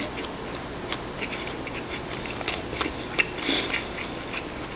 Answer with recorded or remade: recorded